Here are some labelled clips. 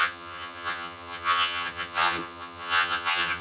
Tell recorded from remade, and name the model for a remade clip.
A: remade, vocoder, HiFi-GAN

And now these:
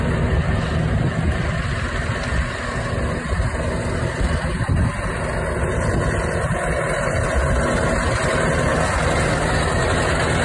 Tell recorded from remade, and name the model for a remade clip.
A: recorded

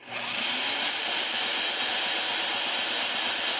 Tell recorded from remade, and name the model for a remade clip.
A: recorded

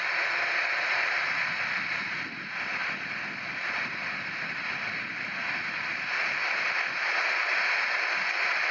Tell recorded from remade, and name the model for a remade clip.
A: recorded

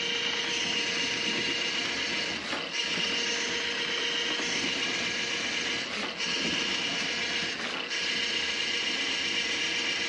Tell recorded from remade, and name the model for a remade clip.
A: recorded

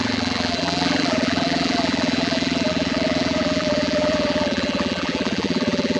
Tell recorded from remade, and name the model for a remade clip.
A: remade, vocoder, BigVGAN v2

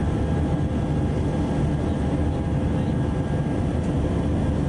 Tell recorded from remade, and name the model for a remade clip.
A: recorded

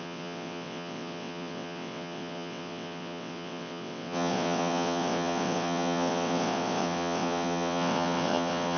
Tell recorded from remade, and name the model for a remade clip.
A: remade, vocoder, WaveNeXt